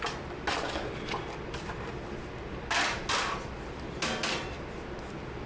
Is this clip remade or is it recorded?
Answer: recorded